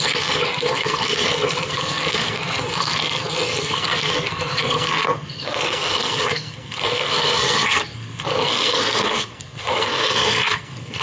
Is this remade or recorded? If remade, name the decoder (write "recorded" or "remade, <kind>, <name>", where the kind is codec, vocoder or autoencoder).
remade, codec, SNAC